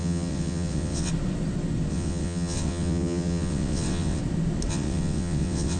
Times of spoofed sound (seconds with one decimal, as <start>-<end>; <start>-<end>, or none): 0.0-1.1; 1.9-4.2; 4.7-5.8